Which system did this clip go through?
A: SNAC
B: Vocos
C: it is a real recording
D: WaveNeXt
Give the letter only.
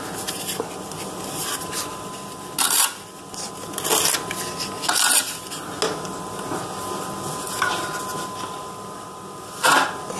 C